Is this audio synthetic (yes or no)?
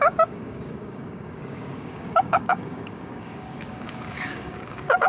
yes